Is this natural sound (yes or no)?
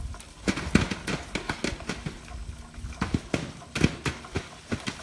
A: yes